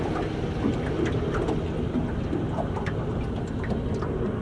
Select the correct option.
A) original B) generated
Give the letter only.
A